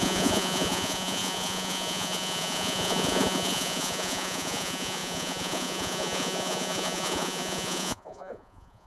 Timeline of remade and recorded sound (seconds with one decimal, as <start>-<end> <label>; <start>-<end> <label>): 0.0-8.9 remade